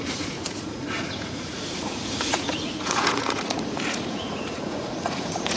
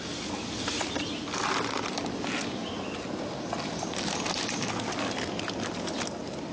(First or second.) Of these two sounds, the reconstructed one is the first